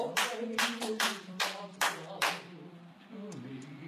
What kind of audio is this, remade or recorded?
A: remade